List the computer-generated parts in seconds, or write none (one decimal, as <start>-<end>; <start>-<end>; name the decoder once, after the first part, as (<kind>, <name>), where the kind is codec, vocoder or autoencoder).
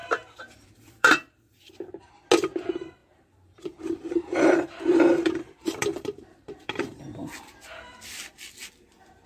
0.0-2.1 (vocoder, BigVGAN v2); 3.0-7.0